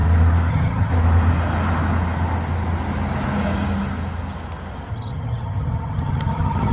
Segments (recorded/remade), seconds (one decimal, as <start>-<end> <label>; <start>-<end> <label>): 0.0-0.5 recorded; 0.5-0.9 remade; 0.9-4.9 recorded; 4.9-6.7 remade